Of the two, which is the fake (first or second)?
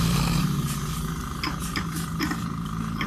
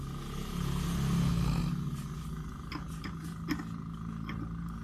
first